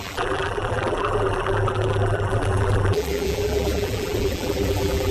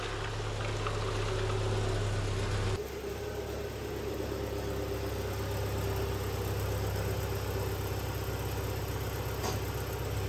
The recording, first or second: second